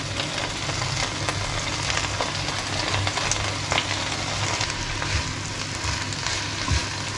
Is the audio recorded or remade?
recorded